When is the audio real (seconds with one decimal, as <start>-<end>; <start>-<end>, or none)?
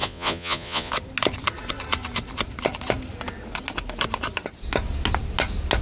0.9-5.8